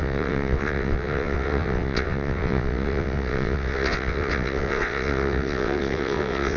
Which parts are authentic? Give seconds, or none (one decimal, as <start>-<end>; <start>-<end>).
none